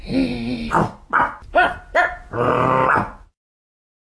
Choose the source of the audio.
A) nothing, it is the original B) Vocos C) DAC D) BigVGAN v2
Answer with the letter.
A